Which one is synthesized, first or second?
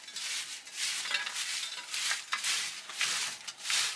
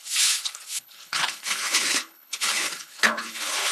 second